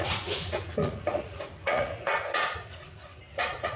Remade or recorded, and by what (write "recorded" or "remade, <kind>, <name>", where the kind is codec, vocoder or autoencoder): remade, vocoder, Vocos